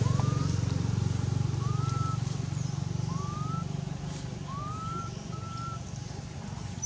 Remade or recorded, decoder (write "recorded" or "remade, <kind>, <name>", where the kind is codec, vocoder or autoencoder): recorded